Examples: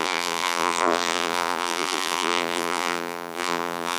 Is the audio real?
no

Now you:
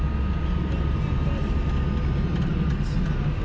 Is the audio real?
yes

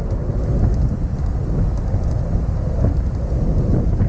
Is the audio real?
yes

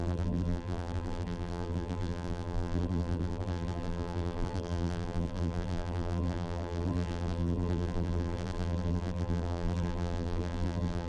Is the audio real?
no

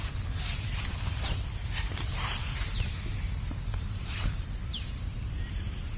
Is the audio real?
no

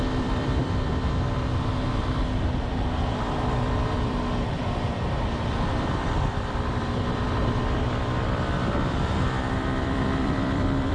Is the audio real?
no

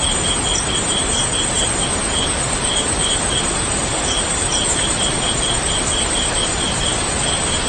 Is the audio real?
yes